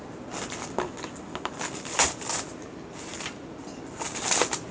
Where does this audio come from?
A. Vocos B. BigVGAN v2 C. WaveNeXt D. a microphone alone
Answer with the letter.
D